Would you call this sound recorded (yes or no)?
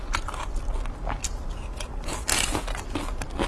yes